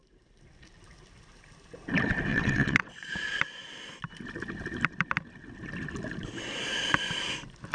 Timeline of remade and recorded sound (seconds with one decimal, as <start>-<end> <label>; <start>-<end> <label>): 0.0-2.3 recorded; 2.3-3.1 remade; 3.1-7.7 recorded